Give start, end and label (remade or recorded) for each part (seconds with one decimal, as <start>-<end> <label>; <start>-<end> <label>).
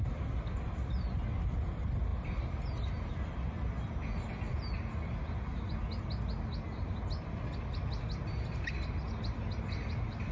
0.0-10.3 recorded